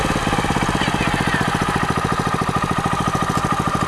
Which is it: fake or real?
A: real